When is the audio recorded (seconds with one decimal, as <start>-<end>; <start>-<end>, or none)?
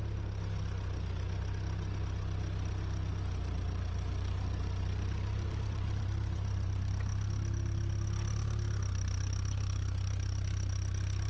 0.0-3.1; 6.9-11.3